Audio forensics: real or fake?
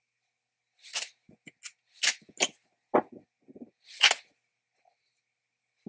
real